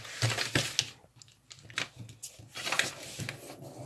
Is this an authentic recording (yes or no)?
yes